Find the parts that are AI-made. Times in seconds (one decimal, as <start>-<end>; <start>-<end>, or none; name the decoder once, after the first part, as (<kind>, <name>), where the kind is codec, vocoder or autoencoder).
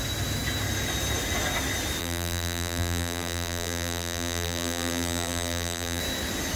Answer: 2.0-6.0 (vocoder, BigVGAN v2)